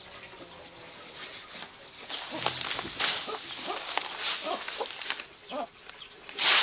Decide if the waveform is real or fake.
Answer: real